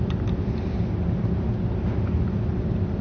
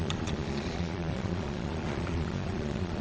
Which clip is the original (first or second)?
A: first